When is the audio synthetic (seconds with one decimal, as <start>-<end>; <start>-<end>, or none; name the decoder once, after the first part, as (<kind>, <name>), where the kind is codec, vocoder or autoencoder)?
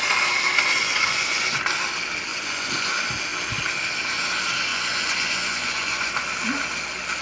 0.8-1.5 (vocoder, Vocos); 2.3-2.9; 4.7-6.1